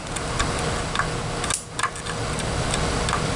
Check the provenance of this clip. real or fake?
real